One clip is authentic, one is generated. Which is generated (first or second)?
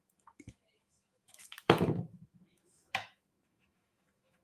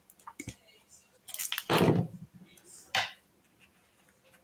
first